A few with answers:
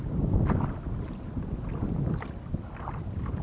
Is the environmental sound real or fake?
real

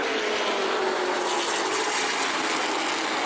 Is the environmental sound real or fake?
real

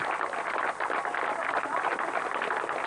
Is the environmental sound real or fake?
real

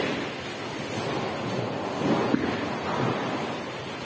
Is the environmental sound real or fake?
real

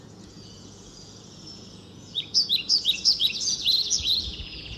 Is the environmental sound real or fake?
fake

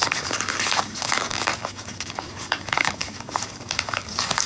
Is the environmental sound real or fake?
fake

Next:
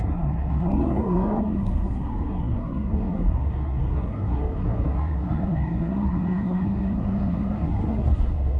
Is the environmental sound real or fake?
fake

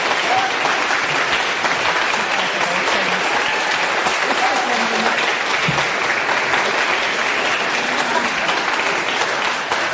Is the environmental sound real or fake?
real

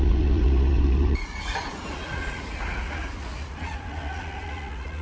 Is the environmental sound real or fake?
fake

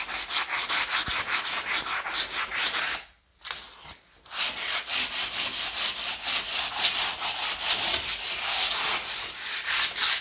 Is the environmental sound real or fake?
real